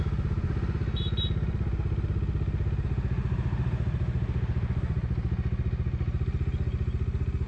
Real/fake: real